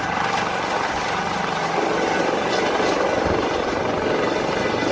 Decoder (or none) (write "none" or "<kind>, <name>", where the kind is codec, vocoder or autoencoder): none